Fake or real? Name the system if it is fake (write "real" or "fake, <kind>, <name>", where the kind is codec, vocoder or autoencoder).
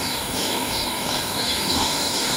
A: fake, codec, DAC